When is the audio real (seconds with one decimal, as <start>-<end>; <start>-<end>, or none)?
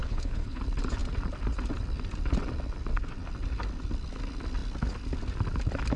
0.6-6.0